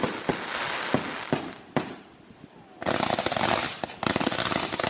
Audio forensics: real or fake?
real